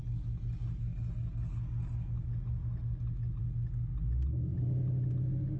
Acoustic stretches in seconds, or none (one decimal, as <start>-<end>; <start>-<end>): 0.0-5.6